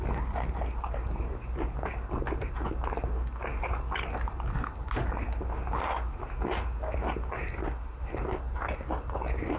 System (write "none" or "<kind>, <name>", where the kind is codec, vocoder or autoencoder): none